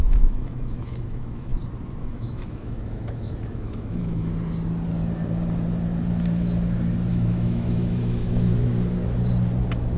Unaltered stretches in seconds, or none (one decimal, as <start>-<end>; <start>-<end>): 1.5-2.0; 4.3-7.1; 8.5-10.0